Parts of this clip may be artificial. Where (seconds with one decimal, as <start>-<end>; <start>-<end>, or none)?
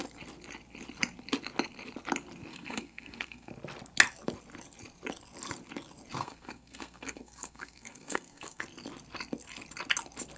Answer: 2.5-3.5; 6.2-8.6